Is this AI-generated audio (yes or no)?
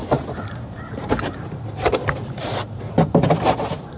yes